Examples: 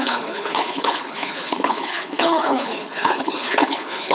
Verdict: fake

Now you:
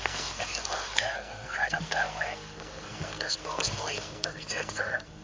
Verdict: fake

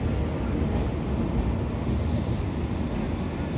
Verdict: real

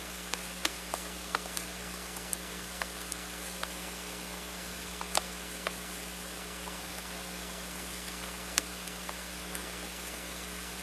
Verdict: fake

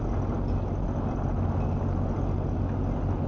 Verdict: real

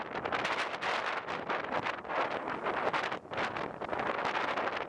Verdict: real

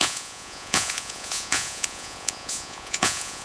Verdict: fake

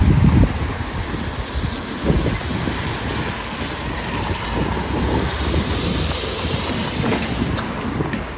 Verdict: real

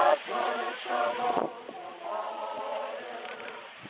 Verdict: fake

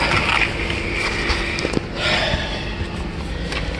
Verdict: real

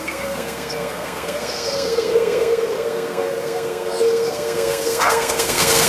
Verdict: fake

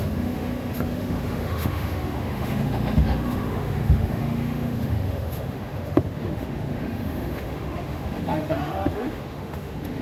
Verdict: fake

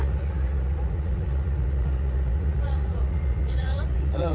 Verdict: fake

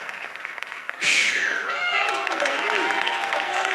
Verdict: fake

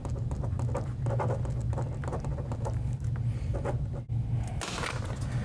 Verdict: real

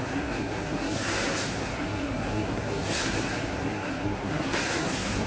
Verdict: fake